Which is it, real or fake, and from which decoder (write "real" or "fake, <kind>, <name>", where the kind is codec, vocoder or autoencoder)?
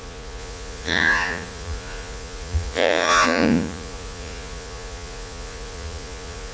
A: fake, vocoder, Vocos